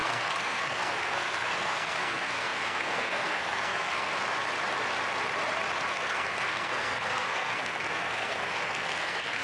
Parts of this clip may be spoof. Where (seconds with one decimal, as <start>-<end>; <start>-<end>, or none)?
0.0-4.1; 5.9-9.4